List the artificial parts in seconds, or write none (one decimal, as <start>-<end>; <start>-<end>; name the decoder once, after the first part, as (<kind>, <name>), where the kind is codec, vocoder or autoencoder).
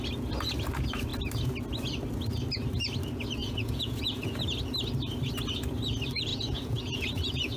3.4-4.4 (vocoder, Vocos); 6.3-7.6